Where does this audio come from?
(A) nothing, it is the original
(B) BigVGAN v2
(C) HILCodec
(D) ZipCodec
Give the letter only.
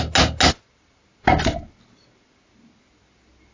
A